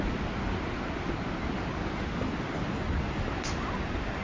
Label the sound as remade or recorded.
recorded